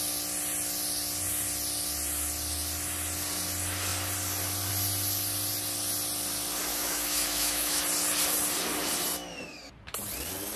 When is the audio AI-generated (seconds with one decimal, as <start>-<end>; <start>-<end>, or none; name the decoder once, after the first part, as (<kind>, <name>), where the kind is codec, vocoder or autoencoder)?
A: 6.7-7.8 (autoencoder, DAC-VAE)